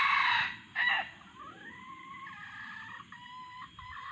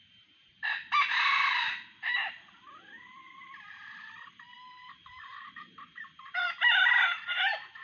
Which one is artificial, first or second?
second